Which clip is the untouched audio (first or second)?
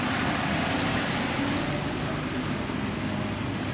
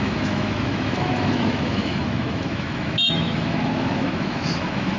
first